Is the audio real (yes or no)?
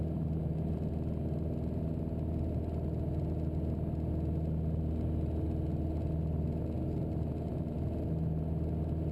yes